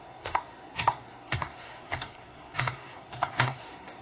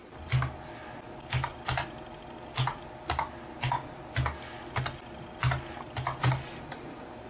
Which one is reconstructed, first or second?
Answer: first